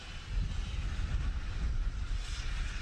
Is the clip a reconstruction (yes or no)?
no